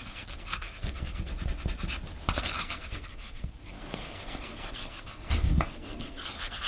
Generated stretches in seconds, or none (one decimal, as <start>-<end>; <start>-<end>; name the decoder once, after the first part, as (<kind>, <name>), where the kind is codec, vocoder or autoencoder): 0.0-1.3 (codec, SNAC); 2.4-6.7